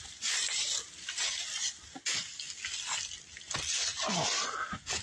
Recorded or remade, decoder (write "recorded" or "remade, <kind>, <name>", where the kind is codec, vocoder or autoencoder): recorded